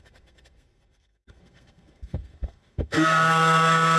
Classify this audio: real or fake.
fake